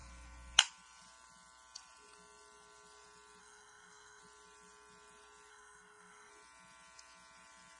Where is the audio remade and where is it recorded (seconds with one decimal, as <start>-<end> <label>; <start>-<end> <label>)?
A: 0.0-3.4 recorded; 3.4-4.2 remade; 4.2-5.5 recorded; 5.5-6.3 remade; 6.3-7.8 recorded